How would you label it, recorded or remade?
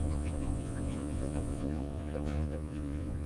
remade